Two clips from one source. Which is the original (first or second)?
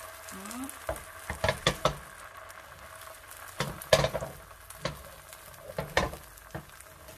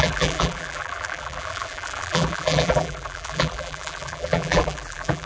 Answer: first